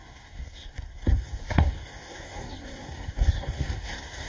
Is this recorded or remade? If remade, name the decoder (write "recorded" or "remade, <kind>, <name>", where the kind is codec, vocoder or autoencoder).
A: remade, codec, SNAC